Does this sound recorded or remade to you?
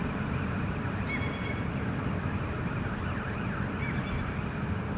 recorded